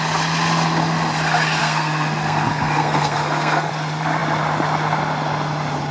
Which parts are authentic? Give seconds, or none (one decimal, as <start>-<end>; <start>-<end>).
0.0-1.6; 3.7-5.9